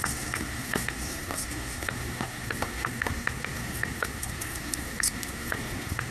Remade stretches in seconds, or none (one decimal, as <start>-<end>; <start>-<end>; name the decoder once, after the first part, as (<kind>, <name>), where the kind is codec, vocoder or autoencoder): 0.0-6.1 (codec, SNAC)